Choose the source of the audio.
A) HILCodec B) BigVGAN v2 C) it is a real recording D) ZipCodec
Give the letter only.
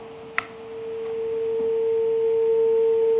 C